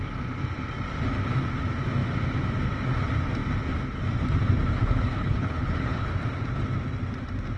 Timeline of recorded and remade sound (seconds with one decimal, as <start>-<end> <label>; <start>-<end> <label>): 0.0-4.7 recorded; 4.7-6.1 remade; 6.1-7.6 recorded